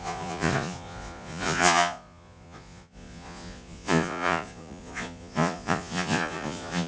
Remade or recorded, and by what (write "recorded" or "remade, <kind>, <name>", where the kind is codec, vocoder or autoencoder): remade, vocoder, Vocos